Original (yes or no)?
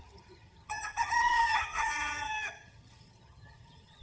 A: no